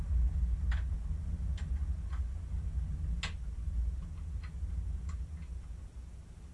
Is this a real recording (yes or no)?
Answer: yes